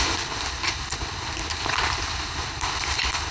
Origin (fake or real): fake